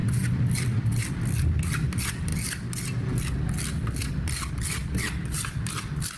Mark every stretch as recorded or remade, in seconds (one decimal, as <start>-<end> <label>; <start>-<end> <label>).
0.0-1.1 remade; 1.1-6.2 recorded